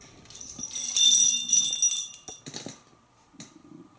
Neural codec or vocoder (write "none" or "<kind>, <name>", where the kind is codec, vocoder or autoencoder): none